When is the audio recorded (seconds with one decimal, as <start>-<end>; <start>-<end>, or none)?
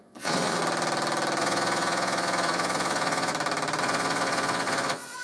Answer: 0.6-1.4; 3.3-3.8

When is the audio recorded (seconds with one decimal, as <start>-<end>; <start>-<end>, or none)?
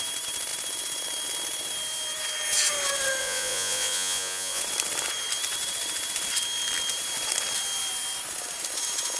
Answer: 0.0-3.2; 4.6-9.2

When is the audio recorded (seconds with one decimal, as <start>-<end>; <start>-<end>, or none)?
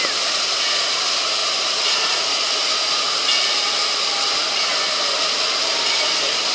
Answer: 0.0-1.4; 2.2-2.6; 3.2-6.5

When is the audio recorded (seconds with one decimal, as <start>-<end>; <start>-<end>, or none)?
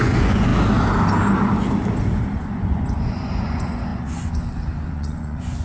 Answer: 0.5-2.4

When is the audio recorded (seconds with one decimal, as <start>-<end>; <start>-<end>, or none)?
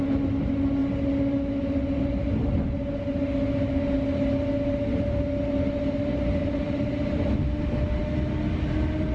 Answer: 0.0-9.1